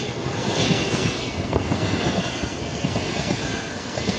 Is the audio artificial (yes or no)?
yes